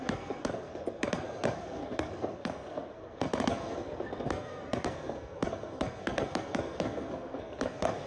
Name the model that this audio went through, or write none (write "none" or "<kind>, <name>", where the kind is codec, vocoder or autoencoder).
codec, SNAC